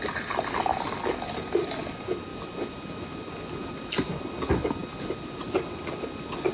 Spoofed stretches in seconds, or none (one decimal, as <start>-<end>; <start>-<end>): none

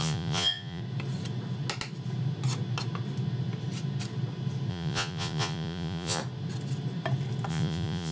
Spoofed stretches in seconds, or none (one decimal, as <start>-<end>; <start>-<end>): 0.0-0.8; 4.7-6.2; 7.5-8.1

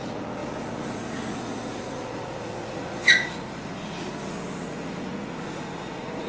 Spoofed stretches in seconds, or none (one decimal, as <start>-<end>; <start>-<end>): 0.0-6.3

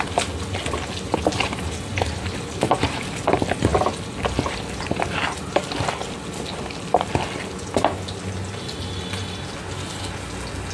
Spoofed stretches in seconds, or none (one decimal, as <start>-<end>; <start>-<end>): none

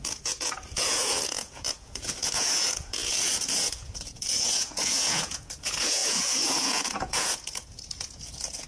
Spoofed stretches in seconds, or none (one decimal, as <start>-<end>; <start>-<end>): 0.0-8.7

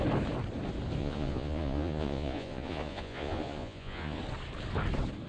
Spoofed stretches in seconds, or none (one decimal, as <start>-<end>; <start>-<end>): 1.0-4.2

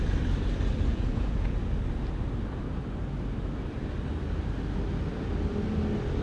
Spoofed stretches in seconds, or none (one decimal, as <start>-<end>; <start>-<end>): 0.9-1.6

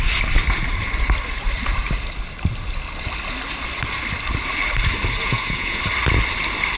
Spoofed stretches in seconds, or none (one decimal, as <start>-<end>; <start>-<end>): 5.2-5.8